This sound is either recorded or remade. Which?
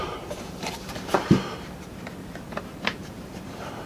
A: remade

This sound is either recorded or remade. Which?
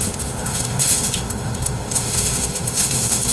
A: remade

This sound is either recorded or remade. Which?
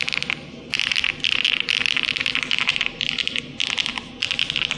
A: recorded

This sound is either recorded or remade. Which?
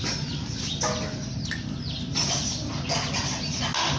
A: recorded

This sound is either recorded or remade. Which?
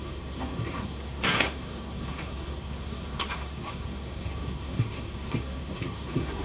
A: remade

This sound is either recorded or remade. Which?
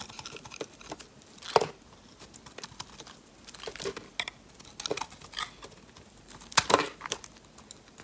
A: recorded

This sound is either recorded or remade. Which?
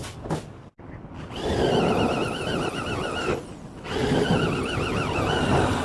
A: recorded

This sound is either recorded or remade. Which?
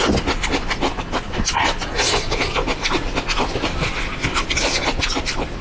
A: recorded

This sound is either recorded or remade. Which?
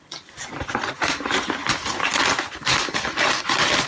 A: recorded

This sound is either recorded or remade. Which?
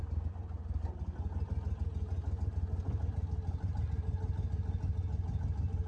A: recorded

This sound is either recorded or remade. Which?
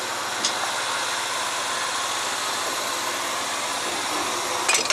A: recorded